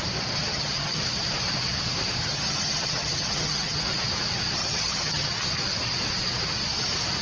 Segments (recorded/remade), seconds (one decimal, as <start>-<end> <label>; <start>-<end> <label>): 0.0-0.5 recorded; 0.5-1.0 remade; 1.0-2.2 recorded; 2.2-3.8 remade; 3.8-4.6 recorded; 4.6-5.4 remade; 5.4-7.2 recorded